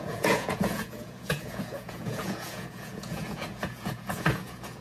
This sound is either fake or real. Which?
fake